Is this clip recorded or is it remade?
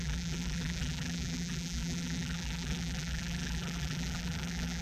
remade